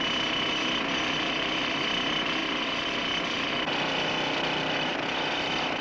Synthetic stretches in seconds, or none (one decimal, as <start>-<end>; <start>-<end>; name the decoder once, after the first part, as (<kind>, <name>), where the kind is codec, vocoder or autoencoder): 2.4-3.5 (vocoder, BigVGAN v2); 4.9-5.8